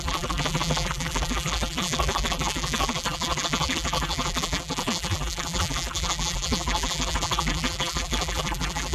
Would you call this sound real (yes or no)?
no